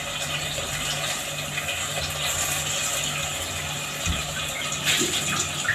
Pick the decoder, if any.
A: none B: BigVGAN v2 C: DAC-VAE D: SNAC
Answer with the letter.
A